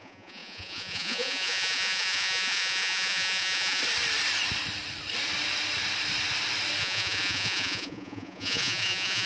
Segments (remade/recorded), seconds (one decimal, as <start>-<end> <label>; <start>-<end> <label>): 0.0-3.8 remade; 3.8-6.8 recorded; 6.8-9.3 remade